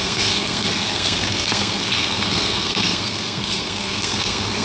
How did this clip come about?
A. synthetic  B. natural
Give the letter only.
A